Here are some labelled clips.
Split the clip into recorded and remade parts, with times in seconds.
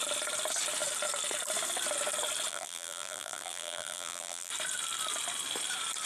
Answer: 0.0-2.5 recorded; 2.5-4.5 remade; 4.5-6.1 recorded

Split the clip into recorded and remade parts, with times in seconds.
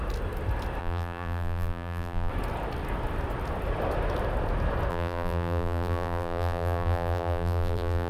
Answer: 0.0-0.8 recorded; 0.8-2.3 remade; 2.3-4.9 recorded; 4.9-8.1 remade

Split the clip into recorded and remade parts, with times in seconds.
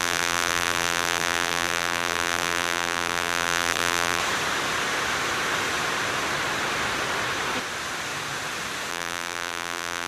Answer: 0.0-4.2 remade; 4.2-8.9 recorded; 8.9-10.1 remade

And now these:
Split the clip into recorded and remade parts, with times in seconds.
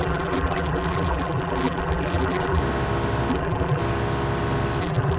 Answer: 0.0-2.6 remade; 2.6-3.3 recorded; 3.3-3.8 remade; 3.8-4.8 recorded; 4.8-5.2 remade